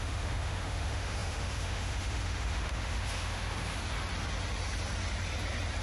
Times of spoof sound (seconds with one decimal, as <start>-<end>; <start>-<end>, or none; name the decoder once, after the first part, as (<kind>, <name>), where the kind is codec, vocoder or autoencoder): 0.0-3.8 (autoencoder, DAC-VAE)